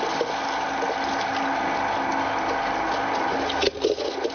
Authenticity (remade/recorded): recorded